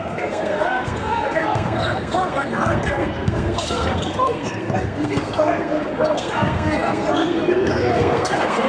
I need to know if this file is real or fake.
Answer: fake